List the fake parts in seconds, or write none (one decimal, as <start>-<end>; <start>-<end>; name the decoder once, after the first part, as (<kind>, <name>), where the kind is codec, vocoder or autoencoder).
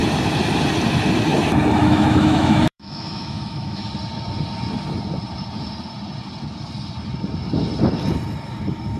1.8-3.9 (autoencoder, DAC-VAE)